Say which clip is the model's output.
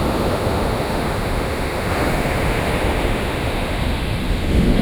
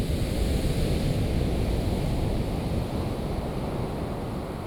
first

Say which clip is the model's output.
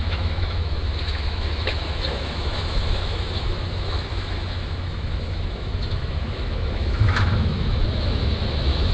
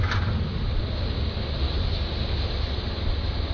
first